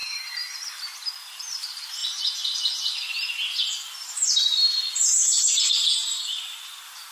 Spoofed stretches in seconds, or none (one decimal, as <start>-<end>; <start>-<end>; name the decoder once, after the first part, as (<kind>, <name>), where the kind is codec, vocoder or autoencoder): 2.0-5.7 (vocoder, BigVGAN v2)